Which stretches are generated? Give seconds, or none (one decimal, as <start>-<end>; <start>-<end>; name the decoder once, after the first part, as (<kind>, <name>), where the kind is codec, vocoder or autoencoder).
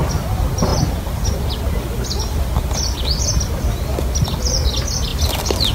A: none